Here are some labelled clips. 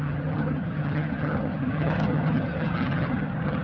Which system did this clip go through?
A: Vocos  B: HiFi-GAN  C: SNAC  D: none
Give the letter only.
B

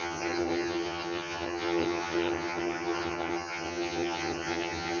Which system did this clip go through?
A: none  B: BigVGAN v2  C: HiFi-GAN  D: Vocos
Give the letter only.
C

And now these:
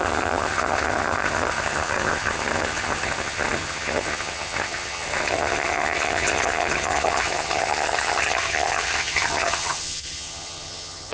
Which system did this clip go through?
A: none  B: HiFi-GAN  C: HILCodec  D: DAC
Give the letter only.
B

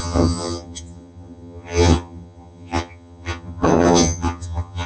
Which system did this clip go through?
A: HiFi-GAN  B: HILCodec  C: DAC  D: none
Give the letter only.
A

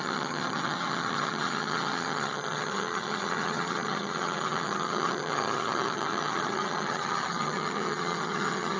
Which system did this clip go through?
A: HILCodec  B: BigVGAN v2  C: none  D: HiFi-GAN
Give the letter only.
D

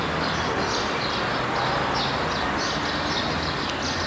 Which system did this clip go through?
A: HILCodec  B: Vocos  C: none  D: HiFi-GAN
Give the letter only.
C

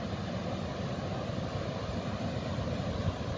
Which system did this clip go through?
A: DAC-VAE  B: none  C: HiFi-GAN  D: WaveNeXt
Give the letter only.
B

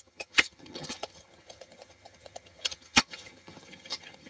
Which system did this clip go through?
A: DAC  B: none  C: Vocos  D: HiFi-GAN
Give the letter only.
D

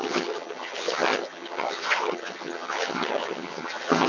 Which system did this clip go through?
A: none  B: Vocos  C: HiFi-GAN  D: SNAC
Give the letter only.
C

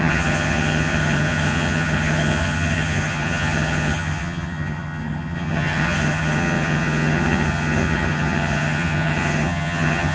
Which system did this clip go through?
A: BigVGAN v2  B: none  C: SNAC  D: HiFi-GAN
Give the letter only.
D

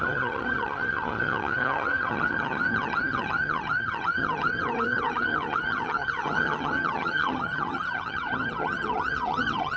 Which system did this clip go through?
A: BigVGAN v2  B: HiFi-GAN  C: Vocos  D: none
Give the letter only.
B